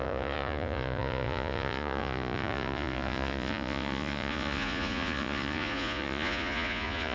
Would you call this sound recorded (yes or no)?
no